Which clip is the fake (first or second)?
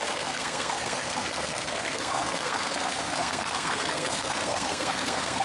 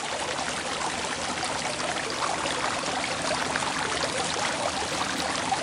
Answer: first